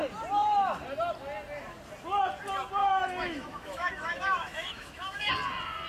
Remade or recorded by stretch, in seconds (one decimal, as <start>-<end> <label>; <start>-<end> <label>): 0.0-2.8 recorded; 2.8-5.3 remade; 5.3-5.9 recorded